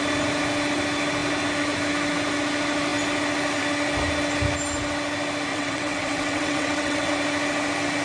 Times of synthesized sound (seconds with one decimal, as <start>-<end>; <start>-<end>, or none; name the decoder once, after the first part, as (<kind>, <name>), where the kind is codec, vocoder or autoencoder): 5.5-7.1 (vocoder, WaveNeXt)

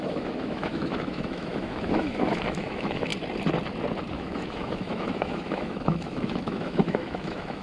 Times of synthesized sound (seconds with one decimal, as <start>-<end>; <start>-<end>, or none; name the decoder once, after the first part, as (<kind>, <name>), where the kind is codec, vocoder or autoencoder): 0.0-3.1 (autoencoder, DAC-VAE); 4.1-7.6

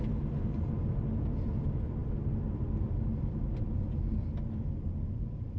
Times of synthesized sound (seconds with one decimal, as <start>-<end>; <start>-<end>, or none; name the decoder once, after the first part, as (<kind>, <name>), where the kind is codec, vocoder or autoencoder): none

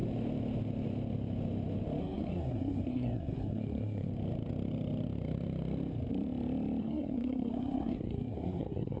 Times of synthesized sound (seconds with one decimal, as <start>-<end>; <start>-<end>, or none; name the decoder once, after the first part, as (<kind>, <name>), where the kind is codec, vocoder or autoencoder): 2.0-4.1 (codec, SNAC); 6.8-9.0